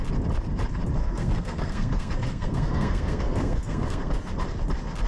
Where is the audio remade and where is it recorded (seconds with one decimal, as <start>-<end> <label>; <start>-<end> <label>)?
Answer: 0.0-1.0 recorded; 1.0-4.1 remade; 4.1-5.1 recorded